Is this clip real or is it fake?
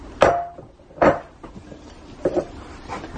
real